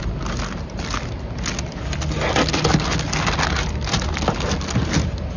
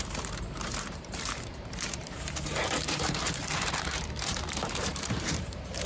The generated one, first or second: second